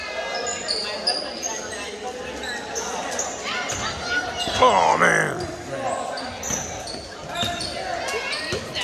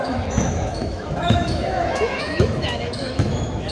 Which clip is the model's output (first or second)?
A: second